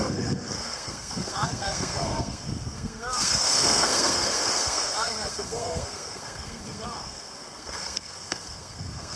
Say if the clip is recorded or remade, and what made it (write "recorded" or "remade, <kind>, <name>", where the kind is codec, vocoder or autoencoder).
remade, codec, SNAC